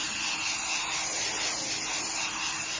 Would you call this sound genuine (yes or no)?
yes